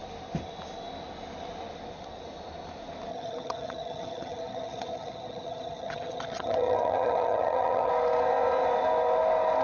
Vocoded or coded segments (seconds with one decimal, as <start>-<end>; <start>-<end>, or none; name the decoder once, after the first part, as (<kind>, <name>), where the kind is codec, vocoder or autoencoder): 3.1-7.9 (vocoder, HiFi-GAN)